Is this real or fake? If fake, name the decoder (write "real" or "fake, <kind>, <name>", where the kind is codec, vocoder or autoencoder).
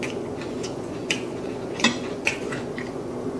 fake, vocoder, Vocos